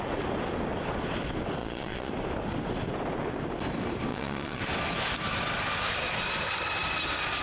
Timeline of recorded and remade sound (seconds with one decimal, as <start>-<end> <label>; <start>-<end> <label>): 0.0-1.6 recorded; 1.6-2.1 remade; 2.1-4.1 recorded; 4.1-4.6 remade; 4.6-7.4 recorded